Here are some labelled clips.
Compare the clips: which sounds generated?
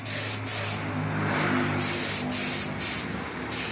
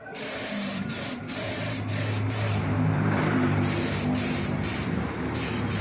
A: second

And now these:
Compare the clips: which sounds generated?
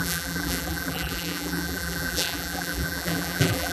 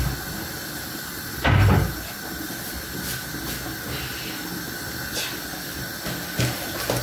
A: first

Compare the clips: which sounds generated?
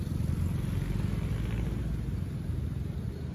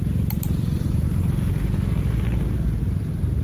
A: second